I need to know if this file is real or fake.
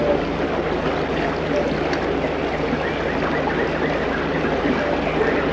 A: real